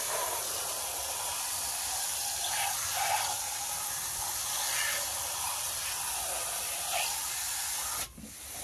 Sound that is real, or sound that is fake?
real